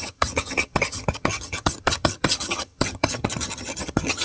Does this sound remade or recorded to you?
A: remade